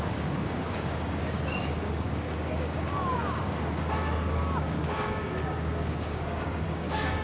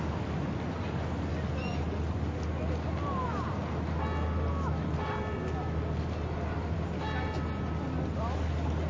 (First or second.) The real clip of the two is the second